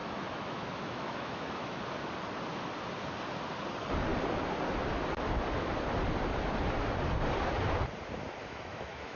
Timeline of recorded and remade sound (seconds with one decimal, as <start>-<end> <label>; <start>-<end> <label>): 0.0-1.8 remade; 1.8-8.4 recorded; 8.4-9.2 remade